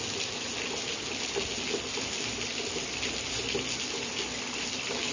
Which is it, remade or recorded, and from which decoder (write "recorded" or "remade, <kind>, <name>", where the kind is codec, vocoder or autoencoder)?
recorded